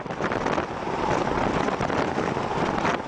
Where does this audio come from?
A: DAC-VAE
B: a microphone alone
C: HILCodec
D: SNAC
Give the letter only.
B